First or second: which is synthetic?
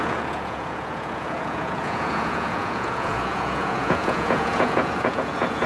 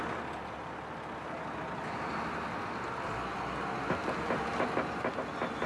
first